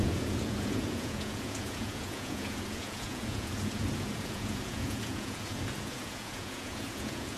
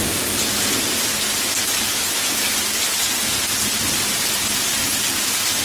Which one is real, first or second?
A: second